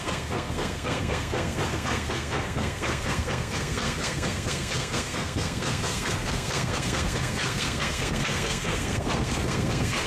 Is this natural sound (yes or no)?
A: no